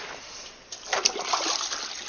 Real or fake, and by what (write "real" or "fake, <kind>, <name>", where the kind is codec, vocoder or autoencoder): real